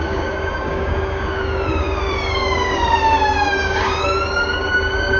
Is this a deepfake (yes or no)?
yes